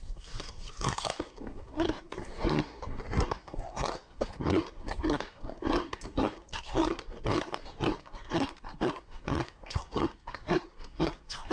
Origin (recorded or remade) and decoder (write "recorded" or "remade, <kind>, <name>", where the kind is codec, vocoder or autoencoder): remade, codec, SNAC